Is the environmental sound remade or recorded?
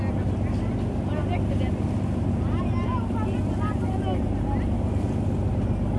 recorded